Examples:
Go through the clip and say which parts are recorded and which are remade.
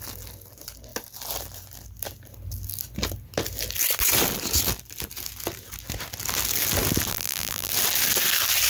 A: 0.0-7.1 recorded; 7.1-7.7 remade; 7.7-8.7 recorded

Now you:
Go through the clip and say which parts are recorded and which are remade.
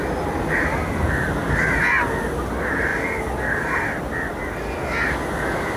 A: 0.0-5.8 recorded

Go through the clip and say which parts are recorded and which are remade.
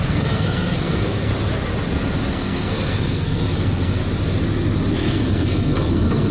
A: 0.0-1.3 remade; 1.3-2.3 recorded; 2.3-4.0 remade; 4.0-5.0 recorded; 5.0-6.3 remade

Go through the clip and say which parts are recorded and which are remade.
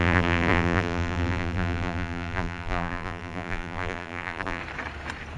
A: 0.0-4.6 remade; 4.6-5.4 recorded